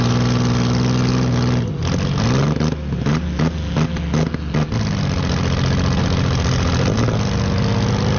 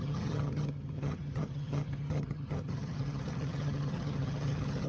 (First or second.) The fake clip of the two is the second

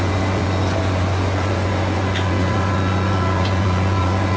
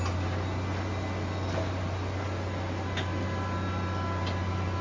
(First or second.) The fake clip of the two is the first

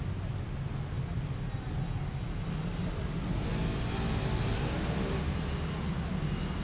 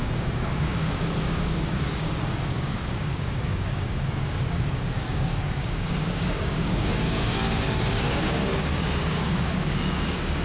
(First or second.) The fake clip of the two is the second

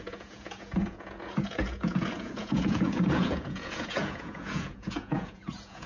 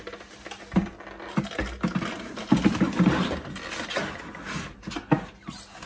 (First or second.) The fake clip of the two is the first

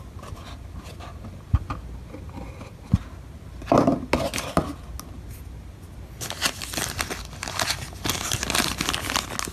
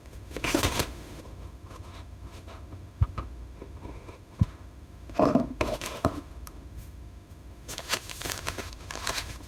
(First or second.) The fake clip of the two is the second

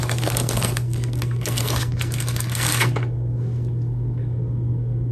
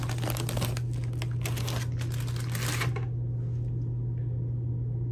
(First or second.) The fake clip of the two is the first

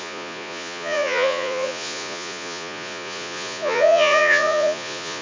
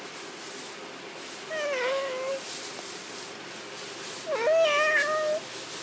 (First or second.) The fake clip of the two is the first